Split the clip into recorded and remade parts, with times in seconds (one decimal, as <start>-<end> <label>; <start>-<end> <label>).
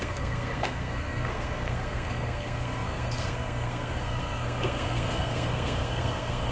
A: 0.0-6.5 remade